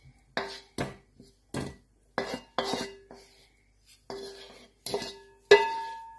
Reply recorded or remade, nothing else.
recorded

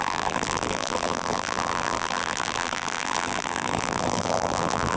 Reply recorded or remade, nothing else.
remade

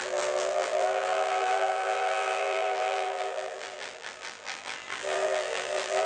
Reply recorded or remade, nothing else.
remade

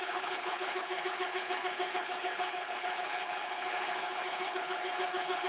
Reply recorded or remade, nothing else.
remade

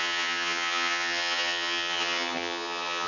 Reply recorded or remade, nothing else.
remade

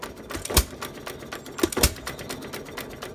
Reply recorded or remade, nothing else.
recorded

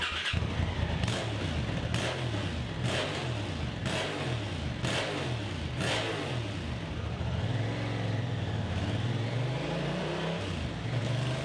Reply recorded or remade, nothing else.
recorded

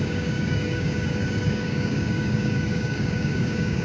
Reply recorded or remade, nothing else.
remade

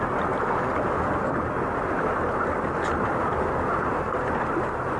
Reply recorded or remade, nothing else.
recorded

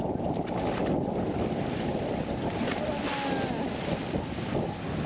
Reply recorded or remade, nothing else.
recorded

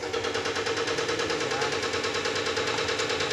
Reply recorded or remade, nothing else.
recorded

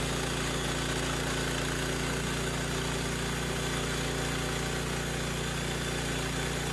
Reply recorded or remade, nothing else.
recorded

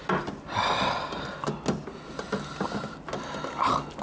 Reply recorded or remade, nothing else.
recorded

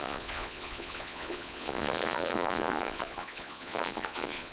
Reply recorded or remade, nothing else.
remade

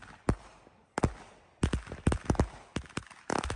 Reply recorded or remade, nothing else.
recorded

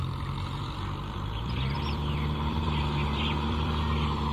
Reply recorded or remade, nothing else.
remade